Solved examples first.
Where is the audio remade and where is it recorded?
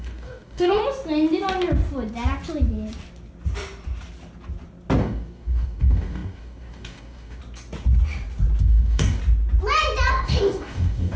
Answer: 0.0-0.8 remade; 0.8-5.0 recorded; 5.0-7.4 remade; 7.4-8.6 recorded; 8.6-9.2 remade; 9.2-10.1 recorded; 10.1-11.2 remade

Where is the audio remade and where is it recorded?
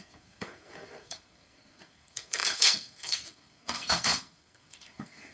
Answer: 0.0-5.3 remade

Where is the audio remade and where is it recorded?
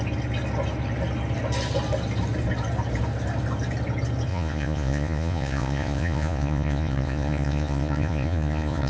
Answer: 0.0-4.3 recorded; 4.3-8.9 remade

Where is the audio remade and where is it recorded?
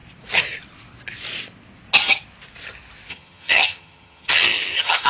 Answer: 0.0-3.1 recorded; 3.1-5.1 remade